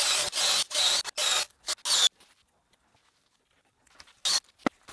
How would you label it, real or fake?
real